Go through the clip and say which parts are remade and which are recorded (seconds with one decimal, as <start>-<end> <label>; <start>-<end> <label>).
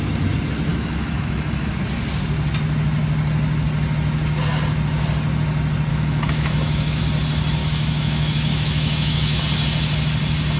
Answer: 0.0-0.7 recorded; 0.7-1.8 remade; 1.8-5.9 recorded; 5.9-7.0 remade; 7.0-7.6 recorded; 7.6-9.4 remade; 9.4-10.6 recorded